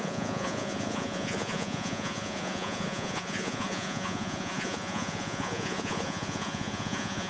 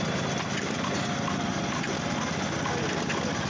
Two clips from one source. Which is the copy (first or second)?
first